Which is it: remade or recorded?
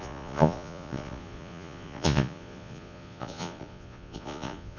remade